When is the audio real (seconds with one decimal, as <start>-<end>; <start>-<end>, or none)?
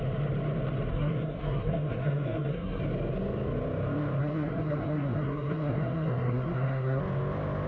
0.0-0.9; 2.8-4.2; 7.0-7.7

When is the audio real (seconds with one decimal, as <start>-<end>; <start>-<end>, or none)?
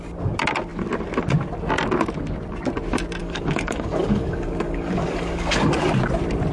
0.0-3.2; 5.9-6.5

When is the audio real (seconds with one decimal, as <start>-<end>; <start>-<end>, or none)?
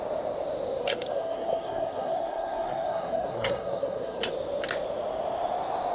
0.0-0.8; 4.3-5.9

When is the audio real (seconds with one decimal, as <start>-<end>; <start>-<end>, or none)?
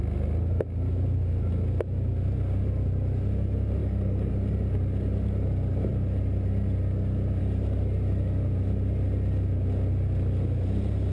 0.0-3.8; 4.3-11.1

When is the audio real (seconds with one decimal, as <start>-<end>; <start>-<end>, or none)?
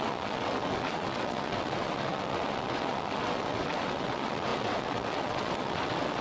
none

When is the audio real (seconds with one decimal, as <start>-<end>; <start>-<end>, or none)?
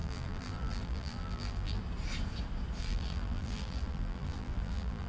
1.8-2.8